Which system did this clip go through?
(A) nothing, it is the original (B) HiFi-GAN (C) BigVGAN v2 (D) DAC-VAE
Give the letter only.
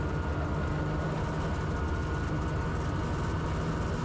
A